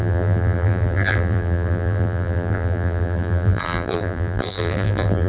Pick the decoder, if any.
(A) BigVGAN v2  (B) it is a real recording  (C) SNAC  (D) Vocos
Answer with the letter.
A